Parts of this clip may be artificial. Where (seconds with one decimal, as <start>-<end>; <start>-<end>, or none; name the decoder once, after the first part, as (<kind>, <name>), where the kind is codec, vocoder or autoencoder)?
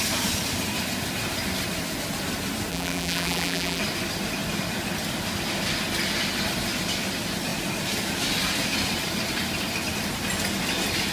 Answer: 2.7-3.8 (vocoder, BigVGAN v2)